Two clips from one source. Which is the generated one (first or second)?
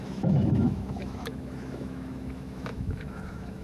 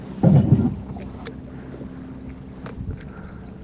first